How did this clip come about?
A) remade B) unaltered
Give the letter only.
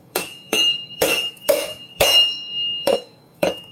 A